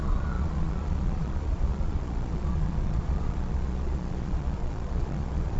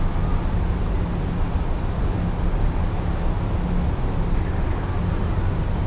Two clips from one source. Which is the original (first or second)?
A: second